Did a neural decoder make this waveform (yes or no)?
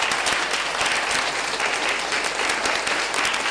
no